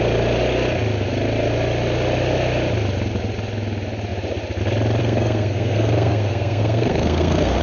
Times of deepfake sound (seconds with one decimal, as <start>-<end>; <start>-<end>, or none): 5.0-7.6